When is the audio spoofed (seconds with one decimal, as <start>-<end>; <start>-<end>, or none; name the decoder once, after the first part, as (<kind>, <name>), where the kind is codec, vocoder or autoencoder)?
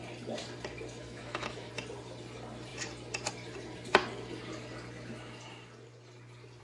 1.0-1.7 (autoencoder, DAC-VAE)